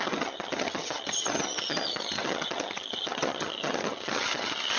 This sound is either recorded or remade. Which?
remade